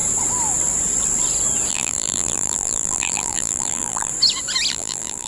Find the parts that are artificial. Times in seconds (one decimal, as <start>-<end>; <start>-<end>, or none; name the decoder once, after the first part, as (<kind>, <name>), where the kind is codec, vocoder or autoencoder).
1.7-4.1 (vocoder, BigVGAN v2); 4.7-5.3